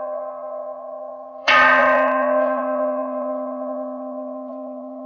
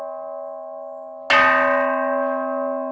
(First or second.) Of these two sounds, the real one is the second